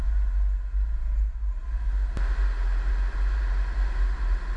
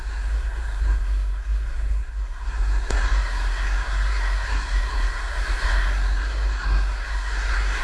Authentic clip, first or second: first